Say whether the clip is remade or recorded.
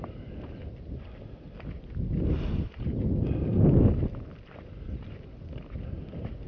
recorded